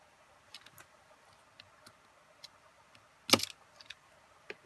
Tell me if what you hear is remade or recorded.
recorded